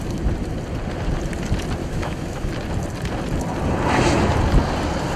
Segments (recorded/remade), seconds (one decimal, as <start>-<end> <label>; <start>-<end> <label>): 0.0-1.8 recorded; 1.8-2.5 remade; 2.5-5.2 recorded